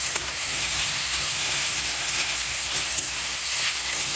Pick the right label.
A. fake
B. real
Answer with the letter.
A